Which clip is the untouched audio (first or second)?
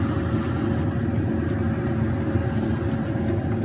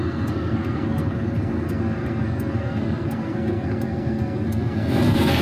first